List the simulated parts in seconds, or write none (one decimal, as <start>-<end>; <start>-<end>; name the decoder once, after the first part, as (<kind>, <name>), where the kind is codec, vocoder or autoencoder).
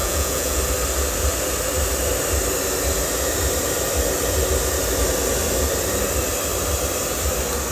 0.0-0.6 (vocoder, Vocos)